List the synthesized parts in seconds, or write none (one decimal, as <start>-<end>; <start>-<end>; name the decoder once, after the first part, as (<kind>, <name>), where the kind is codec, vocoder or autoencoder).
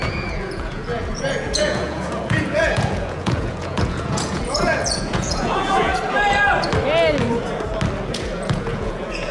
0.0-5.9 (vocoder, Vocos); 8.1-9.3